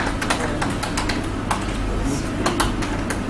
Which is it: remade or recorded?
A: recorded